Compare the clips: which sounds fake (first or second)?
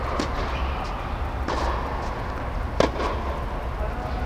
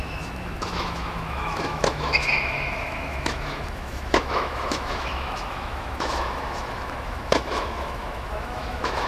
second